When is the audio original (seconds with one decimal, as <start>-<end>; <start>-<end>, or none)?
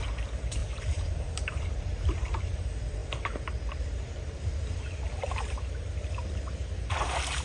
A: none